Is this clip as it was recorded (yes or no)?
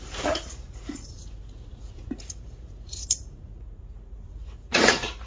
no